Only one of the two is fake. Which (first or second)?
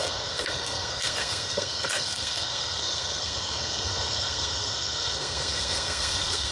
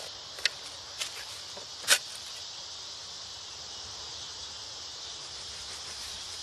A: first